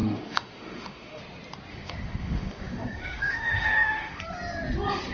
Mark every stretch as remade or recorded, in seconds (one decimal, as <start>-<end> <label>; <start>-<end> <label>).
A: 0.0-1.2 remade; 1.2-1.7 recorded; 1.7-4.2 remade; 4.2-5.1 recorded